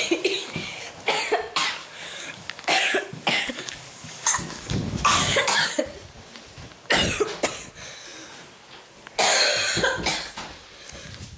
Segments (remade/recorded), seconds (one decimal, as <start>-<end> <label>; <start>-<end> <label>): 0.0-0.4 recorded; 0.4-1.2 remade; 1.2-1.8 recorded; 1.8-5.8 remade; 5.8-11.4 recorded